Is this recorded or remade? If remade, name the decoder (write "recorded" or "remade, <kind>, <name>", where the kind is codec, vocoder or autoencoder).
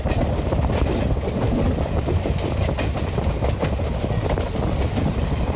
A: recorded